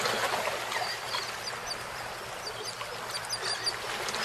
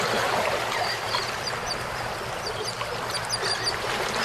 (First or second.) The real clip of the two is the first